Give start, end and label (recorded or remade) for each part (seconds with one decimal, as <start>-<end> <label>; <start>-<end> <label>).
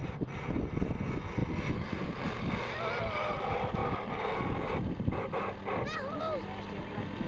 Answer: 0.0-0.7 remade; 0.7-7.3 recorded